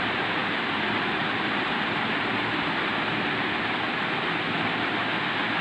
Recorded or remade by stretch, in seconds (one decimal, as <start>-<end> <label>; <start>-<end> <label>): 0.0-5.6 recorded